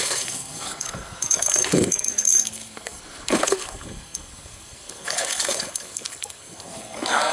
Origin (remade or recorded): remade